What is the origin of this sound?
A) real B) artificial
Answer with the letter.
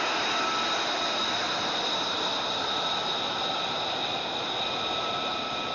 A